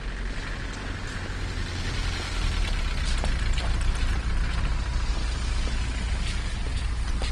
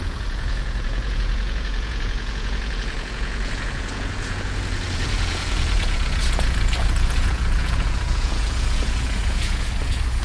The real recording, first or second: first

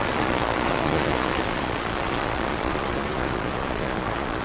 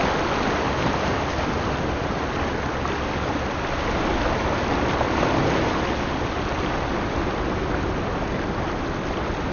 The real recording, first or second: second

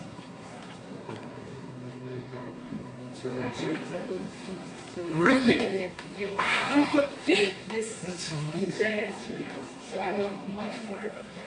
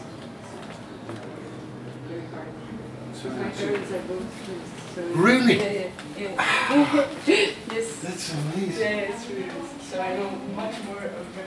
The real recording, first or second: second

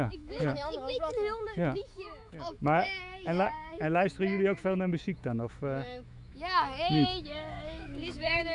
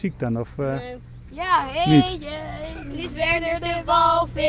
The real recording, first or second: second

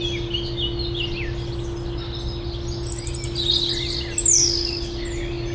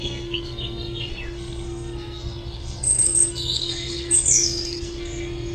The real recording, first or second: first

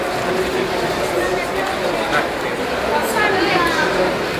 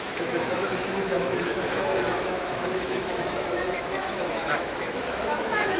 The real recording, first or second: first